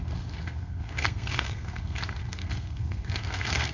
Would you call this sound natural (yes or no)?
no